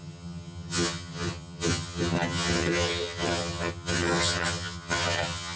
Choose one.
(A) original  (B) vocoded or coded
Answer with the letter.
B